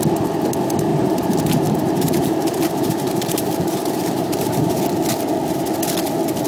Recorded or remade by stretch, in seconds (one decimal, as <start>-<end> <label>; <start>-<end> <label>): 0.0-0.9 recorded; 0.9-4.8 remade; 4.8-6.5 recorded

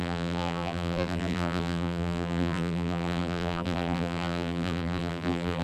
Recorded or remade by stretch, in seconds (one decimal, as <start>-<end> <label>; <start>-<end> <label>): 0.0-5.6 remade

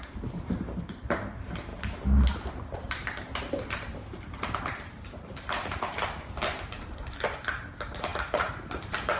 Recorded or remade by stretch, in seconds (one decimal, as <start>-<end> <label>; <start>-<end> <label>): 0.0-9.2 remade

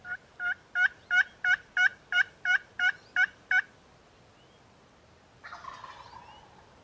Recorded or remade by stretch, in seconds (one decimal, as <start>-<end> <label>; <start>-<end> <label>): 0.0-1.9 recorded; 1.9-3.7 remade; 3.7-6.8 recorded

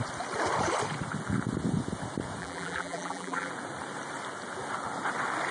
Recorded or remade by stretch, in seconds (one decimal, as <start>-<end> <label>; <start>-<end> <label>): 0.0-2.4 recorded; 2.4-3.5 remade; 3.5-5.5 recorded

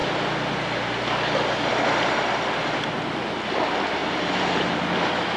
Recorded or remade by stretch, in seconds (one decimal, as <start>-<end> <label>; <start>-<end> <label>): 0.0-4.0 recorded; 4.0-4.7 remade; 4.7-5.4 recorded